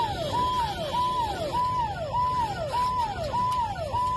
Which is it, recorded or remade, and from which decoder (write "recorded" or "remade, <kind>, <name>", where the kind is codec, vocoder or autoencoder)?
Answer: recorded